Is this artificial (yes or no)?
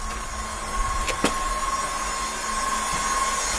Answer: no